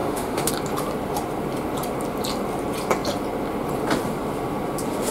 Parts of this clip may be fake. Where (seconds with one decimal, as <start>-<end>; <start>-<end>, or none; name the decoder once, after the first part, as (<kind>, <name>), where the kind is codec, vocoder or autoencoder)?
0.0-0.5 (autoencoder, DAC-VAE)